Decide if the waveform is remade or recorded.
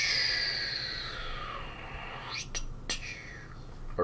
recorded